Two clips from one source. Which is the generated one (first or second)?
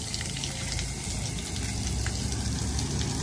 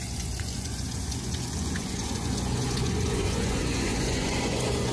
second